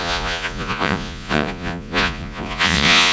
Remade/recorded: remade